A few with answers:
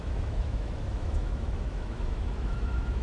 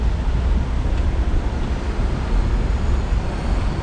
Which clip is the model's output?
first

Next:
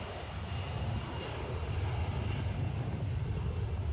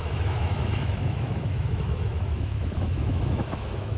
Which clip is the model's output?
second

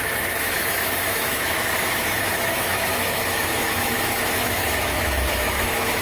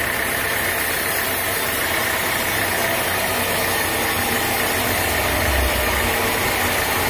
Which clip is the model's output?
first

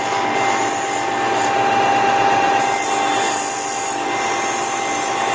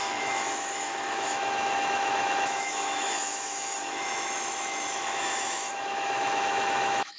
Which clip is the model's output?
second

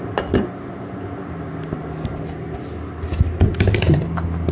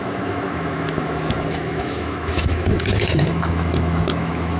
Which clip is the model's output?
second